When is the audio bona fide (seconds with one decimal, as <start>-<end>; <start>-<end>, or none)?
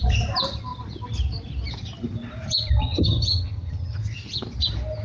0.0-2.8; 4.0-5.0